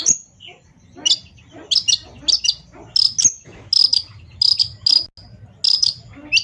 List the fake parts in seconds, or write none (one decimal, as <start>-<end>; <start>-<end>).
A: none